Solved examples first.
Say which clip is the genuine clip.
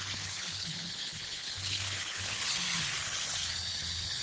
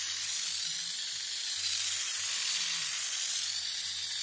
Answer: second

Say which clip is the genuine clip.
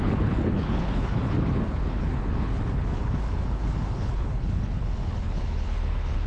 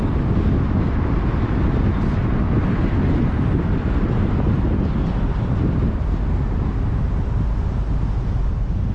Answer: second